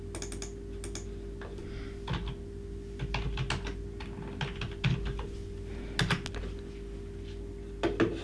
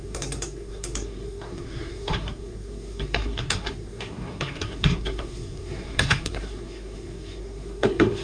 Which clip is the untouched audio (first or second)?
first